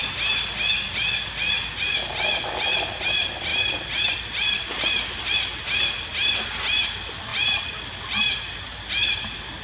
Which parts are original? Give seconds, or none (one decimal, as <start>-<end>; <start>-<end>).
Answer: 0.0-1.8

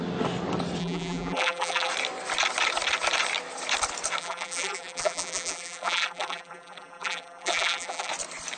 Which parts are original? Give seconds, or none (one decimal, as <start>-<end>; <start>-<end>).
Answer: 0.0-0.8; 1.9-4.2; 8.1-8.6

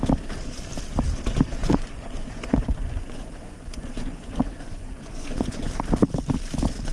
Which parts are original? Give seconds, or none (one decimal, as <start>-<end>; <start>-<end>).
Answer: 0.0-1.6; 5.7-6.9

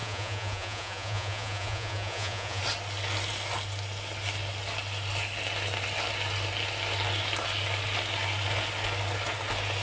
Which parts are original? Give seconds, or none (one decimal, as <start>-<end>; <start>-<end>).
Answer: 2.6-9.8